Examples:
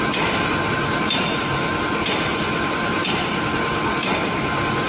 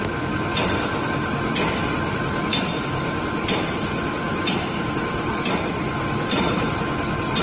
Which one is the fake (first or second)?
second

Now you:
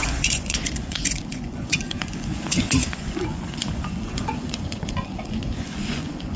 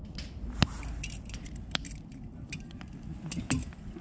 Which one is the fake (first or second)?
first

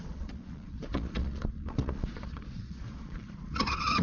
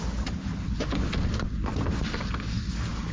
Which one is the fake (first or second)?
first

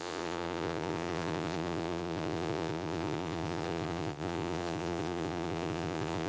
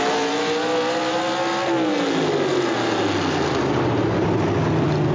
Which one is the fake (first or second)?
first